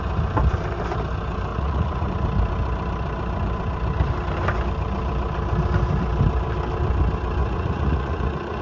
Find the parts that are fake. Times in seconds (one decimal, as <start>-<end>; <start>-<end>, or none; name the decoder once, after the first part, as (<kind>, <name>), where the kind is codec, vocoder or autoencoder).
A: 1.5-2.1 (vocoder, Vocos); 7.4-8.6